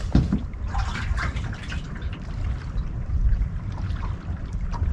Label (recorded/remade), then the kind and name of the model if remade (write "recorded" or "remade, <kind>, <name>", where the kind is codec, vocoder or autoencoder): remade, vocoder, BigVGAN v2